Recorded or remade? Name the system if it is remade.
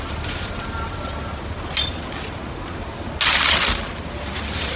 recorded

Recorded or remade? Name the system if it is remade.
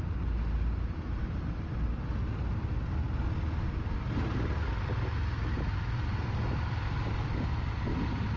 recorded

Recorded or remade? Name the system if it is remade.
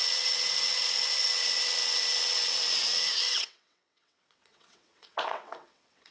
remade, vocoder, WaveNeXt